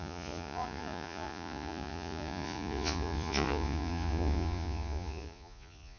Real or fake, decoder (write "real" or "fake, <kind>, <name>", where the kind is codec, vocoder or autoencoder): fake, vocoder, Vocos